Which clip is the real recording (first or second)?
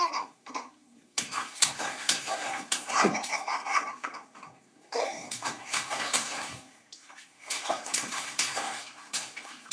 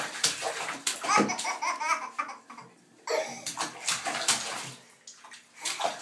second